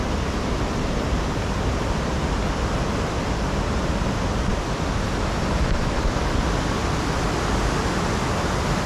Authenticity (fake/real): real